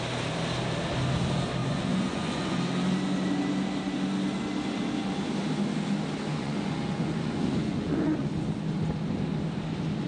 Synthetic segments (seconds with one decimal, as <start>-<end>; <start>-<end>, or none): 1.6-2.6; 6.3-8.3